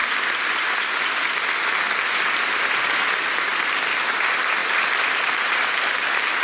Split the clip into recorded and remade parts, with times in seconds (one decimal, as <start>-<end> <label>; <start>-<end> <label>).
0.0-6.4 recorded